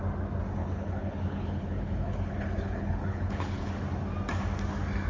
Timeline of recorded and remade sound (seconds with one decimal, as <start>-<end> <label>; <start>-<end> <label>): 0.0-0.6 recorded; 0.6-3.7 remade; 3.7-5.1 recorded